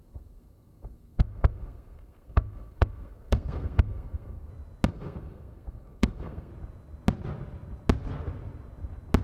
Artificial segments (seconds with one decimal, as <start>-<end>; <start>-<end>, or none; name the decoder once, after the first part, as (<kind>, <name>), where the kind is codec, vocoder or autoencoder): 0.0-4.5 (codec, SNAC); 4.9-6.5